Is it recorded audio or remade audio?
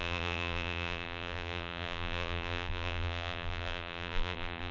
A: remade